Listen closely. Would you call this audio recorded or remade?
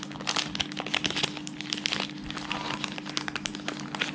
recorded